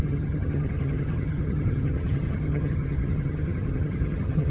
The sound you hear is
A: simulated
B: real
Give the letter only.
A